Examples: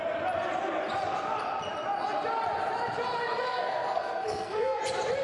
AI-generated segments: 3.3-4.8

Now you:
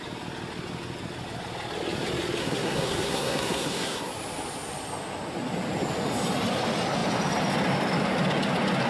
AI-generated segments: 2.4-4.1

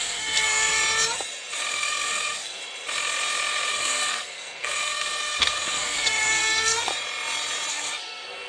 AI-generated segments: 0.0-0.8; 1.7-2.6; 3.7-6.9; 7.7-8.5

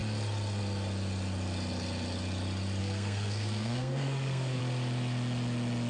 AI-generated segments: 2.8-4.6

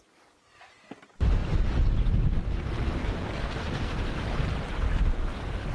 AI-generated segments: 3.0-4.2